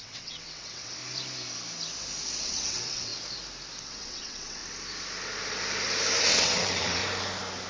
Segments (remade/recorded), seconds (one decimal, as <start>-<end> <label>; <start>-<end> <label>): 0.0-1.0 remade; 1.0-2.4 recorded; 2.4-3.1 remade; 3.1-3.8 recorded; 3.8-4.6 remade; 4.6-6.2 recorded; 6.2-7.0 remade; 7.0-7.7 recorded